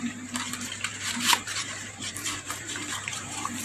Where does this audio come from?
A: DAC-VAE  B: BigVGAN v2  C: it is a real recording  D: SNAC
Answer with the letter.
B